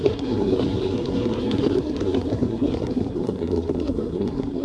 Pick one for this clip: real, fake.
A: fake